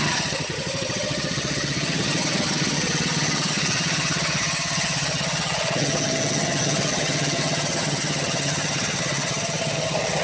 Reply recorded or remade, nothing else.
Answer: remade